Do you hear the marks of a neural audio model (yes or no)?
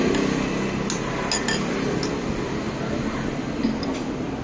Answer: no